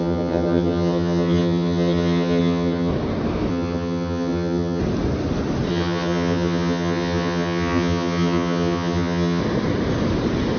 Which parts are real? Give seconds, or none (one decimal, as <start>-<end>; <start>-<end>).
2.9-3.5; 4.8-5.7; 9.4-10.6